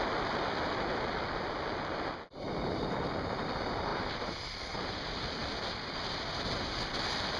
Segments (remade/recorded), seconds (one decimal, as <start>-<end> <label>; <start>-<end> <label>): 0.0-3.9 recorded; 3.9-5.0 remade; 5.0-7.4 recorded